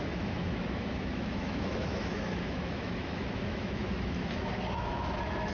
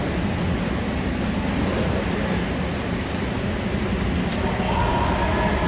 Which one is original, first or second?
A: second